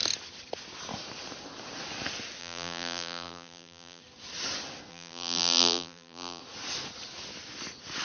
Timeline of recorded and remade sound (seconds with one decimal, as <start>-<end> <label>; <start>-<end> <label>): 0.0-2.4 recorded; 2.4-4.0 remade; 4.0-4.9 recorded; 4.9-6.4 remade; 6.4-8.0 recorded